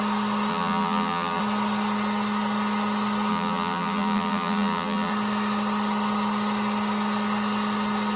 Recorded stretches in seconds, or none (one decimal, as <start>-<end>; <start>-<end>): 0.0-0.5; 1.4-3.3; 5.1-8.2